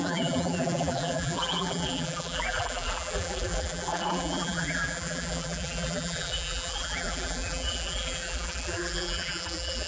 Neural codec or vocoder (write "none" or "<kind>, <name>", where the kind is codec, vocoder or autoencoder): vocoder, BigVGAN v2